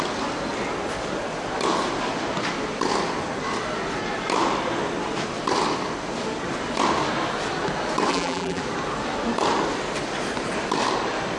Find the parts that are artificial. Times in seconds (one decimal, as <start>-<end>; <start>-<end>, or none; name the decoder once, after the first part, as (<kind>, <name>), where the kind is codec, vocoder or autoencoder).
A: 8.1-8.6 (vocoder, BigVGAN v2)